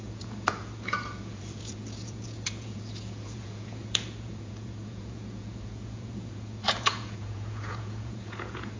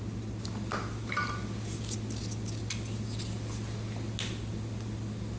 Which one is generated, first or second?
first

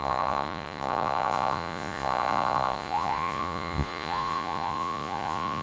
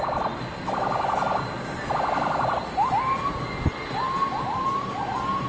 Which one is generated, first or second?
first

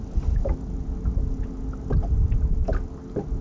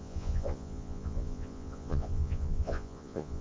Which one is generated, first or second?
second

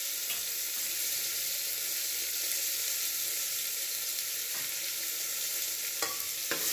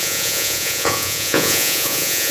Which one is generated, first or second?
second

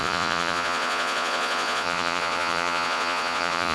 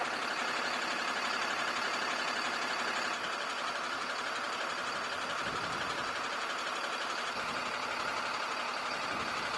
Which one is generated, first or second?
first